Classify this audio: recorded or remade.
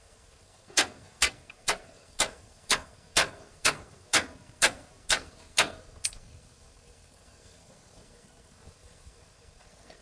remade